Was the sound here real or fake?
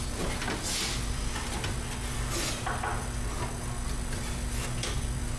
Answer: real